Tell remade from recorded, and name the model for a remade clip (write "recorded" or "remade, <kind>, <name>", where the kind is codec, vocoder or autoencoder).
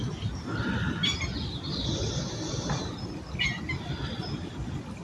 recorded